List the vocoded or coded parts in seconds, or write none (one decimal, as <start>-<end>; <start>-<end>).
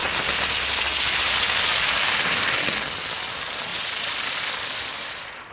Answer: none